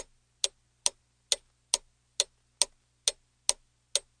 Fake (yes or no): no